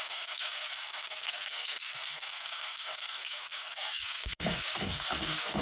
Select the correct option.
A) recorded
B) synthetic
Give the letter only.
B